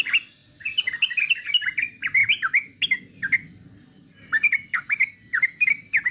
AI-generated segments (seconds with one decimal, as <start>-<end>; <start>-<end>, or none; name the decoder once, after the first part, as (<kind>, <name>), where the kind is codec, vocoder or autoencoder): none